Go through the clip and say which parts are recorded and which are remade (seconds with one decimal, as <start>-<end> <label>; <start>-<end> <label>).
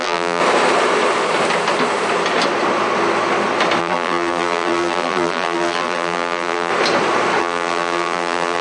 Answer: 0.0-0.4 remade; 0.4-3.8 recorded; 3.8-6.7 remade; 6.7-7.4 recorded; 7.4-8.6 remade